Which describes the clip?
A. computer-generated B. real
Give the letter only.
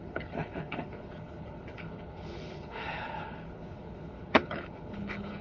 A